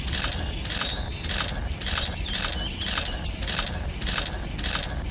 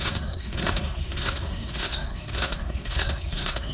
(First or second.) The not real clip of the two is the second